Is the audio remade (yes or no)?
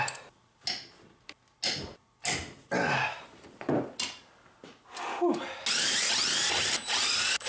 no